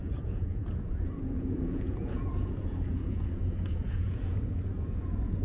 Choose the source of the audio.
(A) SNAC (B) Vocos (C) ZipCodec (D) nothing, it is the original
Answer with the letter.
B